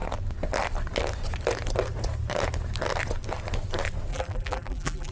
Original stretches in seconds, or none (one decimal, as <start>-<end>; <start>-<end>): 0.0-4.1